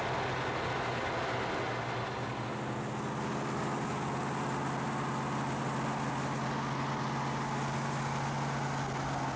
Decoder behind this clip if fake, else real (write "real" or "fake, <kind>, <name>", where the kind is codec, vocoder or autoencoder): real